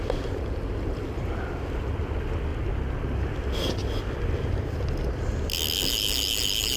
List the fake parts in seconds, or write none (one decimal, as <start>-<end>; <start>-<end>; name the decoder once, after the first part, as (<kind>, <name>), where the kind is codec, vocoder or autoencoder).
none